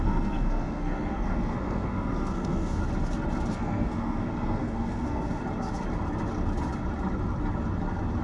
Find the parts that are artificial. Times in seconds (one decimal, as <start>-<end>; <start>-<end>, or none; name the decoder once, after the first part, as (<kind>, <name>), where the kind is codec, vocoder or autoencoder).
0.0-2.8 (codec, SNAC); 3.5-5.4